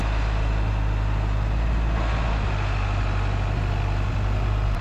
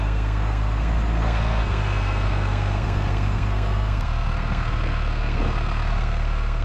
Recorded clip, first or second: first